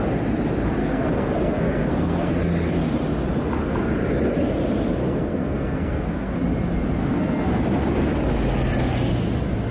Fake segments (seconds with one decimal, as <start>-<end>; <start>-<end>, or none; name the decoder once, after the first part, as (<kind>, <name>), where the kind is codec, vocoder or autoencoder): 0.8-2.3 (codec, SNAC); 5.0-6.3; 7.0-7.6

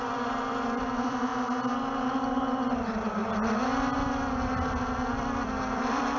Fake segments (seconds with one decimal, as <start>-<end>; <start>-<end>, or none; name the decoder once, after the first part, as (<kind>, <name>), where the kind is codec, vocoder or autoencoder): 0.0-1.3 (vocoder, BigVGAN v2); 2.8-3.2; 5.2-6.2

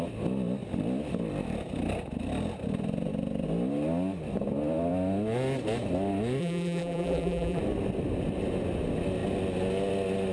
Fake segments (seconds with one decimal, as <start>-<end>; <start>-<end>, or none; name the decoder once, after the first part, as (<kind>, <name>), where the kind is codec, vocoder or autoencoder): 6.4-7.6 (vocoder, BigVGAN v2)

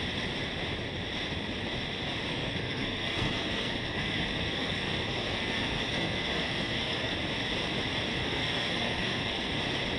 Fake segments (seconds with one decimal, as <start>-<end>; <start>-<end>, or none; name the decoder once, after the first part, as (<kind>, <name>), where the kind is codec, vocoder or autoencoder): 2.3-7.1 (codec, SNAC); 8.2-9.6

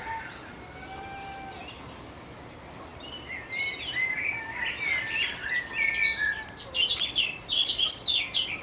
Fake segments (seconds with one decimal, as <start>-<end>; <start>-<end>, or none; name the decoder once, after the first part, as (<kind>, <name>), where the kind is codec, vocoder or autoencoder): none

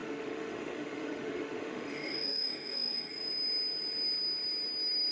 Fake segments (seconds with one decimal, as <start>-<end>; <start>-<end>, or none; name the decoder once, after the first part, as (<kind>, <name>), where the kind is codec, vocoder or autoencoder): 0.0-3.1 (autoencoder, DAC-VAE)

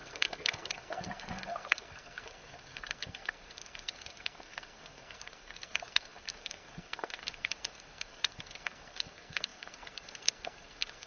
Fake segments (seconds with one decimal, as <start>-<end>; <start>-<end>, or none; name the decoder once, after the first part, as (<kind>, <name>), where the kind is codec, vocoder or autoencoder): 0.0-11.1 (codec, SNAC)